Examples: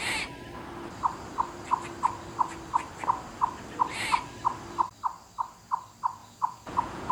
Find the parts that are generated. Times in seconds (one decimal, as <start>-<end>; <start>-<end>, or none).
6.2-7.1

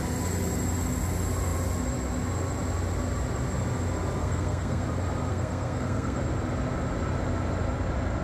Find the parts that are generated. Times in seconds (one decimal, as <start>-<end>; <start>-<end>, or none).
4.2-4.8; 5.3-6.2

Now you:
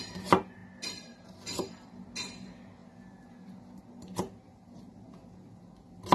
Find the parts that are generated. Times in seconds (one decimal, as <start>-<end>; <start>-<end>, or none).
0.6-1.9